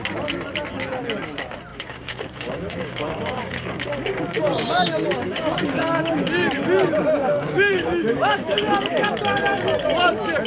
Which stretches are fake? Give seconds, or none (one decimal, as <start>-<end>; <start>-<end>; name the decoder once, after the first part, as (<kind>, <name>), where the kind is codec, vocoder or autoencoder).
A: 1.7-6.2 (codec, DAC); 7.2-9.1